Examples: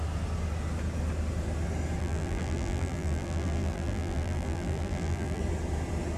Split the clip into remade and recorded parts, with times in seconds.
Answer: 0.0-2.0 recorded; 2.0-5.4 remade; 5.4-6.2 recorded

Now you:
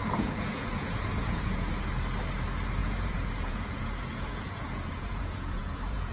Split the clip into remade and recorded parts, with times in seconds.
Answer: 0.0-1.7 remade; 1.7-2.8 recorded; 2.8-6.1 remade

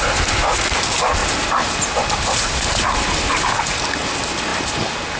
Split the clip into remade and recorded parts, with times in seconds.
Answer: 0.0-5.2 recorded

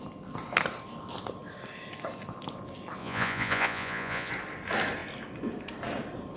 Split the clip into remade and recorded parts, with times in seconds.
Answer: 0.0-3.0 recorded; 3.0-4.3 remade; 4.3-6.4 recorded

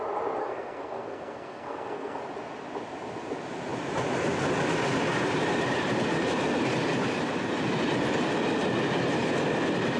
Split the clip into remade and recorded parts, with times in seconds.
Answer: 0.0-0.4 recorded; 0.4-2.2 remade; 2.2-10.0 recorded

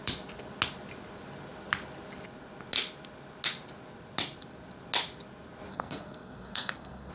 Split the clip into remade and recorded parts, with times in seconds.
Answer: 0.0-5.7 recorded; 5.7-7.1 remade